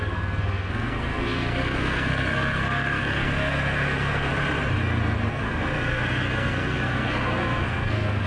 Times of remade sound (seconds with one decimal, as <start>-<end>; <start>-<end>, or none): 0.0-4.3; 5.3-8.3

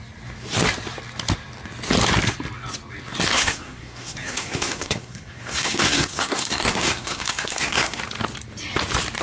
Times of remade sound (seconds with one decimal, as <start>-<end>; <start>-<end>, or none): 3.3-8.0

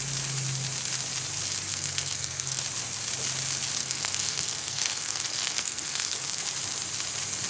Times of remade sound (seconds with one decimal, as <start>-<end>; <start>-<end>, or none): 1.7-2.6; 3.8-6.4

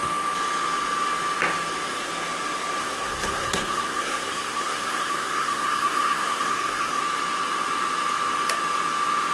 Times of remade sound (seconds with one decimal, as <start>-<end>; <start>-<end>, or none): 2.8-7.0

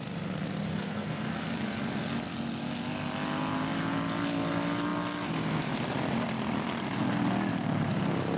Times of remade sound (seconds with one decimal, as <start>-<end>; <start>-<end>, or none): 0.7-1.3

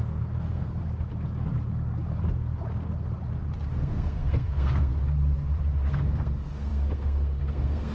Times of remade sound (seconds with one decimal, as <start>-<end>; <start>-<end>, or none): 0.0-0.8; 3.7-4.9; 5.9-7.9

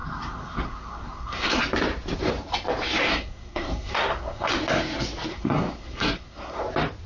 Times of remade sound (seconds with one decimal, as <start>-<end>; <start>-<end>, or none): 0.0-1.6; 3.1-4.5; 5.3-6.6